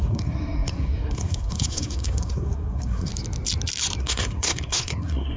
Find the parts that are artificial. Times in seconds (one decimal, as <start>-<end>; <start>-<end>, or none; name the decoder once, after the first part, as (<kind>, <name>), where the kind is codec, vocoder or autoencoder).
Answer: 0.0-3.1 (codec, SNAC); 4.0-5.4